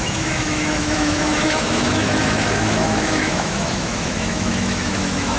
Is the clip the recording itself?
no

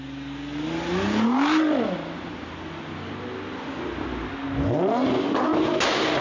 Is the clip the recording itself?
yes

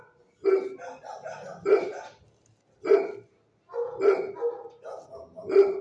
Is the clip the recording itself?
yes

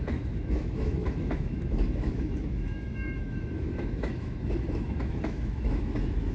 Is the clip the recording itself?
no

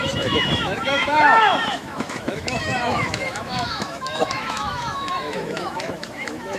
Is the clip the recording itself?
no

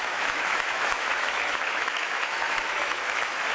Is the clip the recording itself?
no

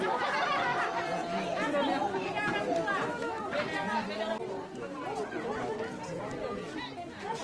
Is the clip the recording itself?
yes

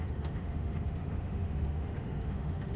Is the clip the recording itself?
no